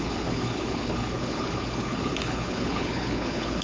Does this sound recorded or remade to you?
remade